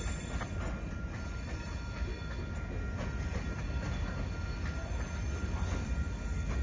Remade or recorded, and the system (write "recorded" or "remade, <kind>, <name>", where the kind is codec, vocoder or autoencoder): recorded